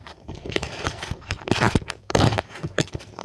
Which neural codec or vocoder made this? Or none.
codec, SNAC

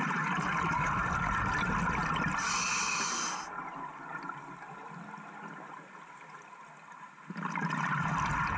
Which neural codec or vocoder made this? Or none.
none